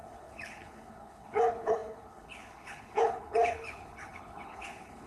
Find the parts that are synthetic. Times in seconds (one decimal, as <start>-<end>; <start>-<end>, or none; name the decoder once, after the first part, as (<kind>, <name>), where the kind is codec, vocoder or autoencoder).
0.0-5.1 (codec, HILCodec)